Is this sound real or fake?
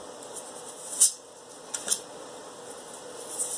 real